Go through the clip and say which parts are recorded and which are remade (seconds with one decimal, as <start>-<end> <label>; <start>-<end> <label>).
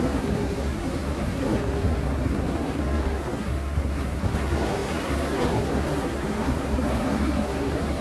0.0-8.0 remade